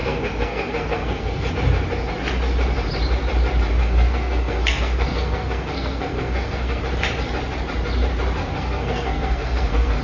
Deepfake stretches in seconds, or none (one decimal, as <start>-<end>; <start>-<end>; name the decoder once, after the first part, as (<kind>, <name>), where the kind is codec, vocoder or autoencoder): 0.0-1.5 (codec, SNAC); 3.8-6.8; 8.4-10.0